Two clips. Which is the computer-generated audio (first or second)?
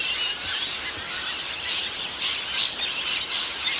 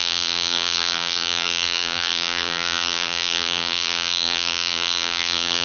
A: second